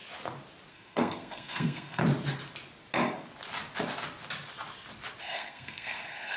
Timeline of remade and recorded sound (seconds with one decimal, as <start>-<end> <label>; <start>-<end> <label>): 0.0-0.7 recorded; 0.7-2.0 remade; 2.0-5.2 recorded; 5.2-6.4 remade